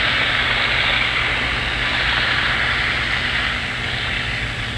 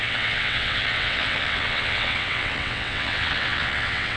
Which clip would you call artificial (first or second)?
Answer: second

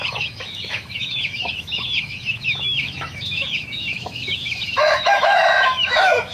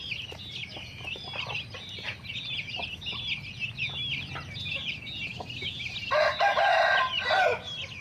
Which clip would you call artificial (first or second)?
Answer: first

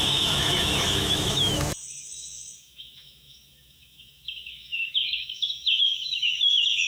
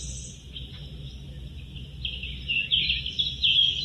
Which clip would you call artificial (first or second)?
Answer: first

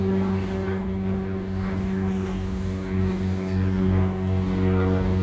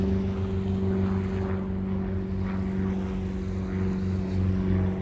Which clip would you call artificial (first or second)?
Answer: first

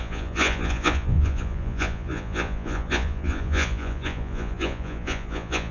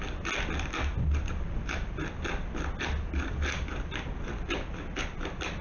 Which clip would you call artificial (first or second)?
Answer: first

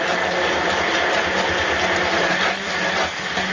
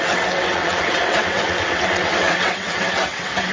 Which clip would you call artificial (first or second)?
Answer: second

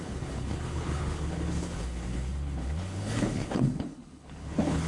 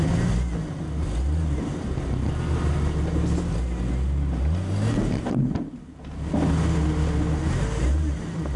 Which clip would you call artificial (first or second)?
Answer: first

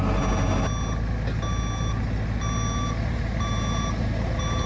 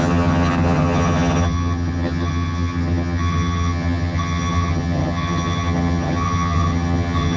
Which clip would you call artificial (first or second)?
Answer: second